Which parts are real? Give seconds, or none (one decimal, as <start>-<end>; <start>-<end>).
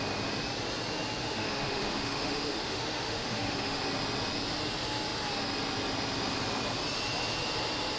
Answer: 0.0-1.2; 3.8-8.0